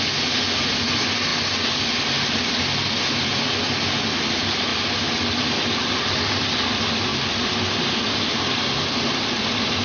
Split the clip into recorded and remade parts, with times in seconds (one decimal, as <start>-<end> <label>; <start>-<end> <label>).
0.0-9.8 recorded